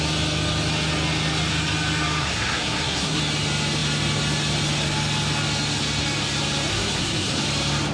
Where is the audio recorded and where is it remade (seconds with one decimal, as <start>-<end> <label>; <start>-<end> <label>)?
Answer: 0.0-2.2 recorded; 2.2-3.2 remade; 3.2-6.7 recorded; 6.7-7.4 remade; 7.4-7.9 recorded